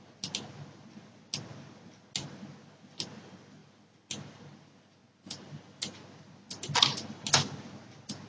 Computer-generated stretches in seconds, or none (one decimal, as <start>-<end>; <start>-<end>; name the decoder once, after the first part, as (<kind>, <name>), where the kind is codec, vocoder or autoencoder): none